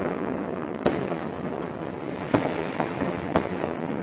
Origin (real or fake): fake